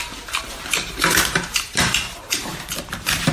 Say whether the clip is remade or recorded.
remade